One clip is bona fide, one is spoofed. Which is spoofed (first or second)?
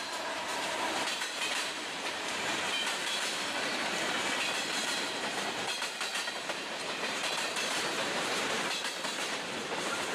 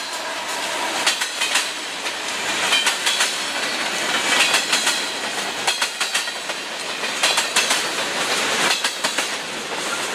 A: first